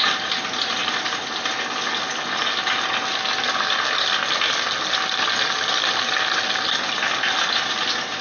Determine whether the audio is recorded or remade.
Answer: recorded